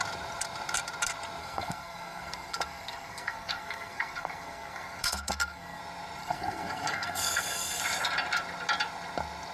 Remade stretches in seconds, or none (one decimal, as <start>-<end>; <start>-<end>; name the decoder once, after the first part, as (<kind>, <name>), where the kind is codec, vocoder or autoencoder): 1.4-5.8 (codec, SNAC); 6.2-7.8